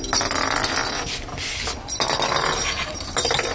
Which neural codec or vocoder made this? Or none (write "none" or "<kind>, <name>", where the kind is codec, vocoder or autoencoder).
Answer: none